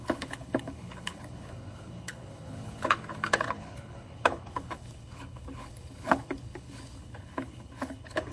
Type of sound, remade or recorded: remade